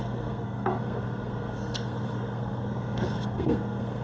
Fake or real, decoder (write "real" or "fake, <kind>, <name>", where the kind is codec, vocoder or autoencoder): fake, codec, SNAC